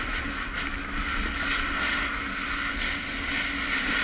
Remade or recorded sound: recorded